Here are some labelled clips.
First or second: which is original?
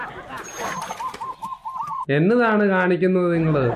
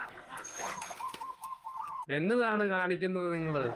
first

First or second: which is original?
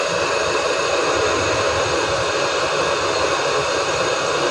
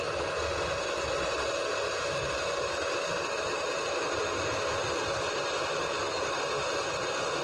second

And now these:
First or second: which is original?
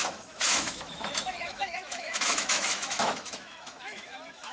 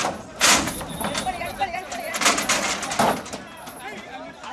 second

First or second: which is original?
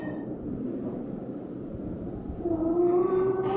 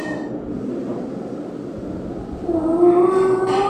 second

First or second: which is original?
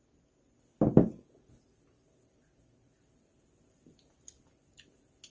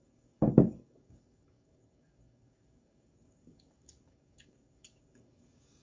first